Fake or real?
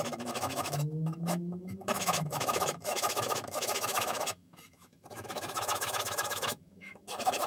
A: fake